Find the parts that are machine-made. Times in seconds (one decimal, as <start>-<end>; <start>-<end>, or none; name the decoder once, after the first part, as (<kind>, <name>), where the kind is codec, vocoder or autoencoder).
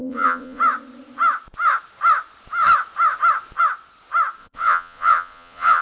0.0-0.6 (vocoder, Vocos); 4.4-5.8